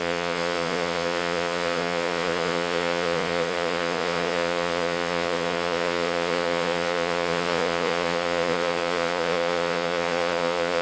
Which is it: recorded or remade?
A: remade